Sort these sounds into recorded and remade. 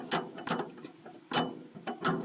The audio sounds recorded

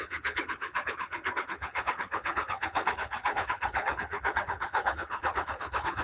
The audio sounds remade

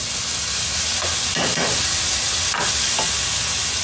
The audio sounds recorded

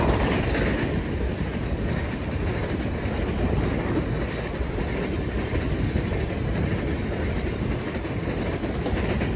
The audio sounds recorded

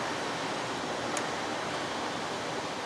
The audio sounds recorded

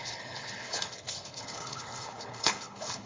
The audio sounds remade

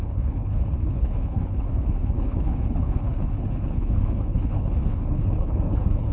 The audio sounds remade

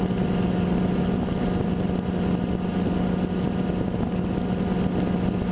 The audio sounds recorded